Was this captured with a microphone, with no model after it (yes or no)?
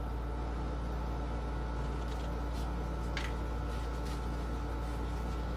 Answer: yes